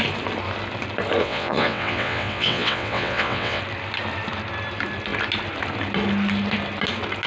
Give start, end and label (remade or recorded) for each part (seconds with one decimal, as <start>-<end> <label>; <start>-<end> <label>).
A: 0.0-1.2 recorded; 1.2-3.6 remade; 3.6-7.3 recorded